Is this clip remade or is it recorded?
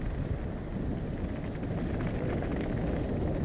recorded